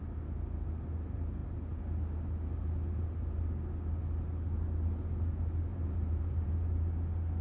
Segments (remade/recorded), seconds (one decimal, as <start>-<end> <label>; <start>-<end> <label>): 0.0-5.7 recorded; 5.7-6.5 remade; 6.5-7.4 recorded